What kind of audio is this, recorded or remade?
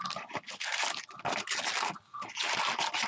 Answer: recorded